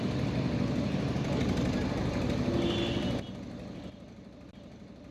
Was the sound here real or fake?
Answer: real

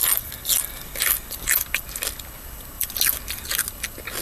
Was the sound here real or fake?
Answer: real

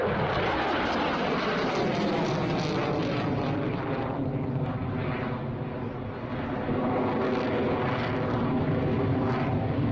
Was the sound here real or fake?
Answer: real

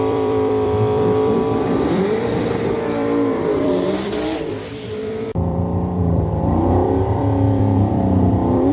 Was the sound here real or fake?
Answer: fake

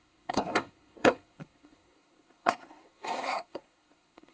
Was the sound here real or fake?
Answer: fake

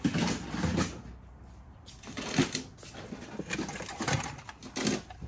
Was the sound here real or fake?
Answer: real